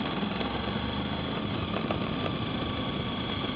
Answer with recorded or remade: recorded